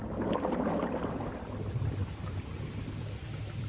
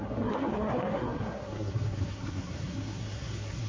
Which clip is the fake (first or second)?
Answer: second